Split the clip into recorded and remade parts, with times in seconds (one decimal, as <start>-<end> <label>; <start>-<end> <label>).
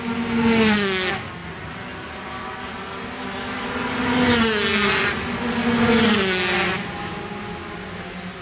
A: 0.0-8.4 recorded